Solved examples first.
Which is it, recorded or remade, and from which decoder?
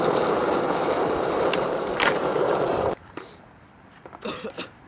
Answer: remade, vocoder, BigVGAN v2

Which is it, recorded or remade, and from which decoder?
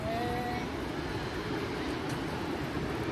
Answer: recorded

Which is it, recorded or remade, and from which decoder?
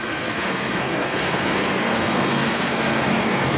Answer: remade, codec, SNAC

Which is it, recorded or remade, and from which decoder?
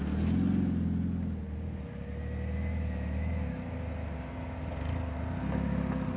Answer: recorded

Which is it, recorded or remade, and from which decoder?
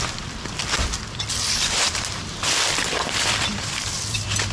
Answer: remade, vocoder, BigVGAN v2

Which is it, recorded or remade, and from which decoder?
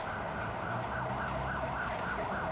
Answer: recorded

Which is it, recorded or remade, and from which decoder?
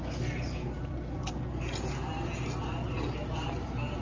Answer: recorded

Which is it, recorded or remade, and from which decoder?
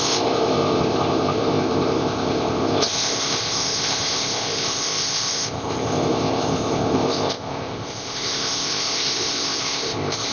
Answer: remade, codec, ZipCodec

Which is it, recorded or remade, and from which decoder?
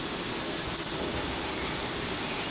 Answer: recorded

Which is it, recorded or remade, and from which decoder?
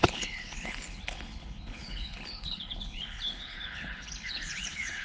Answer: remade, codec, HILCodec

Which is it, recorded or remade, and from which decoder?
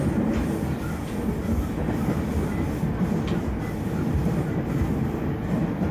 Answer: recorded